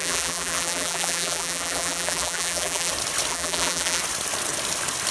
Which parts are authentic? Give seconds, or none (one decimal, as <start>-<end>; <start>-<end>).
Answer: 2.9-3.3; 4.0-5.1